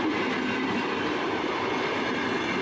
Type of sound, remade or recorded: recorded